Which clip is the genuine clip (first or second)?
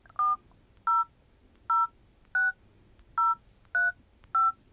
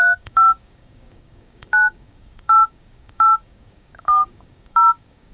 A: first